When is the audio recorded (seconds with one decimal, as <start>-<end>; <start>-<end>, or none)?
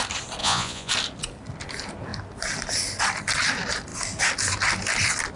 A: 0.0-0.4; 0.9-5.4